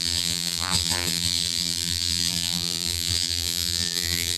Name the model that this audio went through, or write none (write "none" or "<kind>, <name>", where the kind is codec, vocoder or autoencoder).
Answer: vocoder, BigVGAN v2